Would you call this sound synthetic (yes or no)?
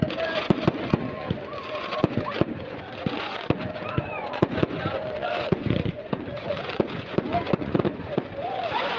yes